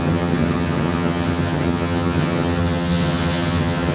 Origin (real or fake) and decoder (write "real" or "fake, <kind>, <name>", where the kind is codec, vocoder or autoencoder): fake, vocoder, HiFi-GAN